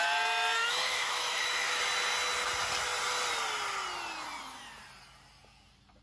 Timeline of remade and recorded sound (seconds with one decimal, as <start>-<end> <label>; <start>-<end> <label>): 0.0-0.6 recorded; 0.6-1.8 remade; 1.8-6.0 recorded